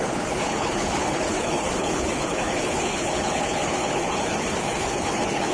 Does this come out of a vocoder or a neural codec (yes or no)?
yes